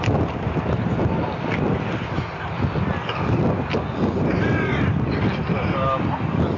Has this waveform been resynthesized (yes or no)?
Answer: no